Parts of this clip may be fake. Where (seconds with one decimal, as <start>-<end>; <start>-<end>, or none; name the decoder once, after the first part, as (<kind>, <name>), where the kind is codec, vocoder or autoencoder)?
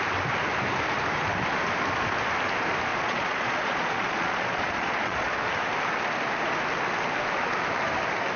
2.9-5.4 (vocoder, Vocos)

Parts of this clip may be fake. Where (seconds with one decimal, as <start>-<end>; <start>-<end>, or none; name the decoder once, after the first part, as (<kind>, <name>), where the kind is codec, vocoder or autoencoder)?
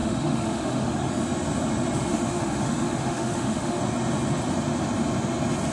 0.0-1.1 (autoencoder, DAC-VAE); 2.1-3.8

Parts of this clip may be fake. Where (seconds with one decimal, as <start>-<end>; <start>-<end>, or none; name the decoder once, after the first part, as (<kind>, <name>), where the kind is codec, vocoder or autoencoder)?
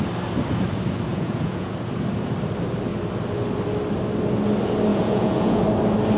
1.1-1.7 (vocoder, Vocos); 4.9-5.6